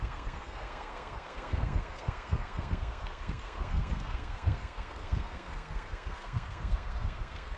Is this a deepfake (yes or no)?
yes